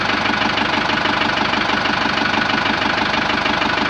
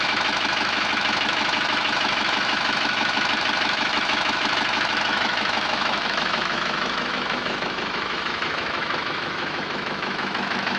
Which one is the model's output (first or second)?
second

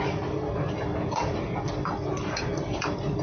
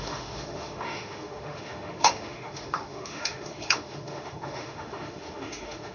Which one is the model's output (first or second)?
second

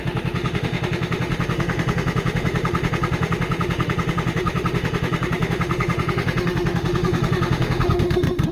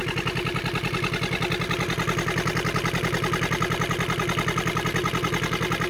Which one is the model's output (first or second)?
first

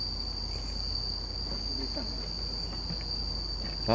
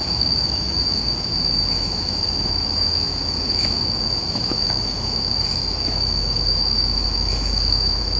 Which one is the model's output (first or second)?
second